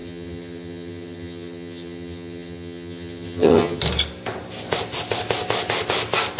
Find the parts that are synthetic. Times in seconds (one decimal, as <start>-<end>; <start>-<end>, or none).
0.0-3.8

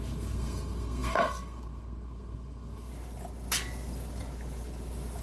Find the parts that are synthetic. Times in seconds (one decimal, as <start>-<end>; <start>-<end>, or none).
0.0-2.9